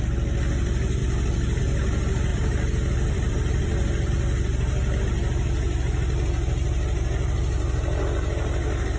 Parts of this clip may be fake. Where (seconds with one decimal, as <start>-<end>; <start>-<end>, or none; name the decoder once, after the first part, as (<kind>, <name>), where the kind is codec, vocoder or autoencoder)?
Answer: 2.3-4.1 (vocoder, BigVGAN v2)

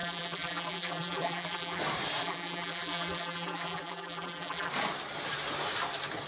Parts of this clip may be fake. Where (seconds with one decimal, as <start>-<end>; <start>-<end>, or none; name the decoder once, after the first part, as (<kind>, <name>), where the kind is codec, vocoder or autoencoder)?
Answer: 0.0-1.8 (vocoder, BigVGAN v2); 2.2-4.7

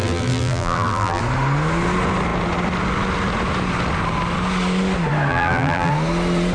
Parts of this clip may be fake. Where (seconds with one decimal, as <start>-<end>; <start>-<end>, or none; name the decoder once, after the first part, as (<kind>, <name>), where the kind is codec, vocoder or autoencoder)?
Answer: 0.0-1.2 (vocoder, BigVGAN v2); 5.3-5.9

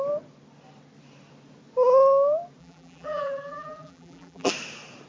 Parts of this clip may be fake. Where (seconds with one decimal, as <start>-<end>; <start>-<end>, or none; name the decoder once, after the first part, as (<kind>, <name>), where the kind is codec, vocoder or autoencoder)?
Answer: 2.6-4.5 (vocoder, BigVGAN v2)

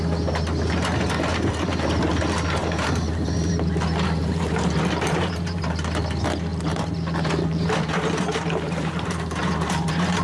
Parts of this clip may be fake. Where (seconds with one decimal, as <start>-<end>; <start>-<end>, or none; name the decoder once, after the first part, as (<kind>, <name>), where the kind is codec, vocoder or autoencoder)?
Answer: 1.3-2.2 (vocoder, BigVGAN v2); 2.6-3.5; 4.2-5.6; 6.5-10.2

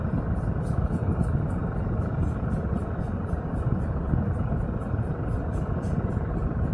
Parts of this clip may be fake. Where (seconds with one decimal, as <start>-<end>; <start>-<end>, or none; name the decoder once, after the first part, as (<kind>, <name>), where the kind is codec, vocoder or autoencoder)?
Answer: 1.6-5.1 (vocoder, BigVGAN v2)

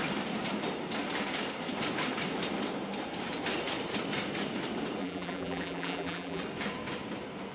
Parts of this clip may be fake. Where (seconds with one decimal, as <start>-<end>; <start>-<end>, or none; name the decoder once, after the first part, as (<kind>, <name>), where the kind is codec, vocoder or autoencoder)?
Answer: 5.0-6.4 (vocoder, BigVGAN v2)